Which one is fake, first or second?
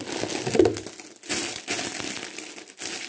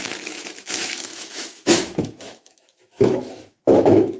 second